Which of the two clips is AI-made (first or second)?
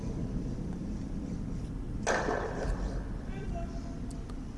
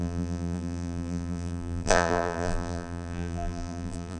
second